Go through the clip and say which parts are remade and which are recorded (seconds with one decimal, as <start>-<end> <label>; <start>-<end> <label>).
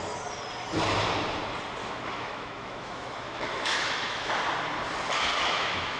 0.0-1.8 recorded; 1.8-4.3 remade; 4.3-5.3 recorded; 5.3-6.0 remade